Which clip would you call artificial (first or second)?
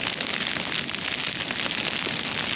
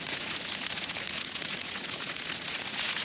second